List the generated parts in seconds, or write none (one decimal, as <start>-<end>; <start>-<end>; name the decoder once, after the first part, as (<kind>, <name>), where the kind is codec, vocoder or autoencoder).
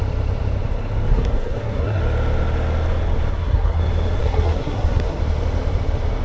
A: 1.1-2.0 (codec, SNAC); 3.3-3.8; 4.2-5.2